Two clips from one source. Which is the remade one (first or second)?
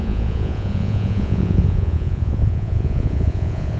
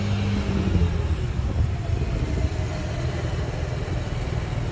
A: first